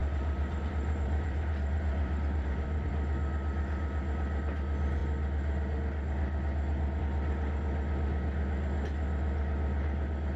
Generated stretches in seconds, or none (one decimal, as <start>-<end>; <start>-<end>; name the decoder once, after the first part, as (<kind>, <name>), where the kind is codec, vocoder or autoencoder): 0.0-2.9 (vocoder, BigVGAN v2)